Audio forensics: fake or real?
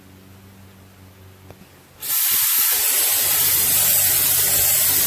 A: real